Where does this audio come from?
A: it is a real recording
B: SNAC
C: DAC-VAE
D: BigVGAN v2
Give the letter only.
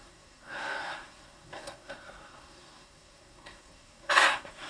B